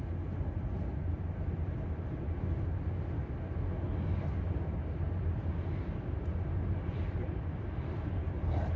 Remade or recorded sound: recorded